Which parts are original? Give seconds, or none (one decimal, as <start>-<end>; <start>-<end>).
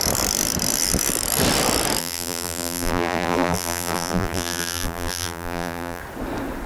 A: 0.0-2.0; 6.0-6.7